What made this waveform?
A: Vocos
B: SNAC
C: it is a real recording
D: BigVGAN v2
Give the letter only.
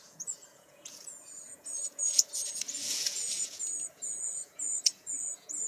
A